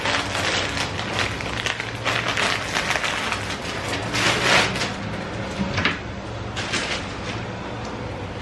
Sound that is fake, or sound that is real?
real